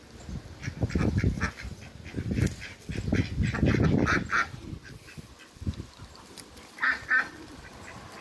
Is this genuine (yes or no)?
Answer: yes